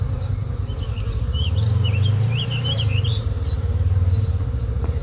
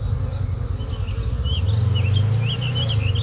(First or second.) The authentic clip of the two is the second